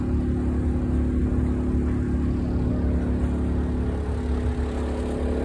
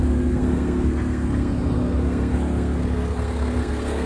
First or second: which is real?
first